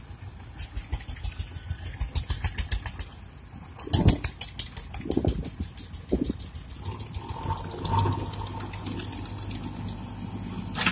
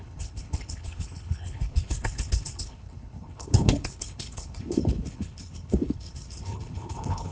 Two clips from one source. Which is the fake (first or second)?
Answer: second